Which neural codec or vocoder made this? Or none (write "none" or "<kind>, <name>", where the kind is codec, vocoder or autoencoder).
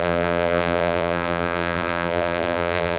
vocoder, BigVGAN v2